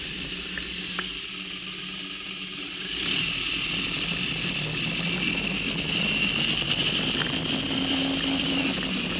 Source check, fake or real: real